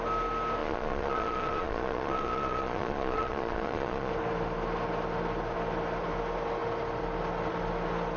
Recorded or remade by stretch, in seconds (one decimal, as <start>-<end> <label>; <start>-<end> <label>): 0.0-0.6 recorded; 0.6-4.1 remade; 4.1-8.2 recorded